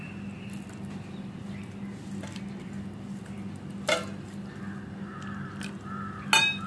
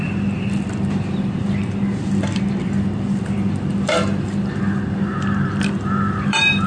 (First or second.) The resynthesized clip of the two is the second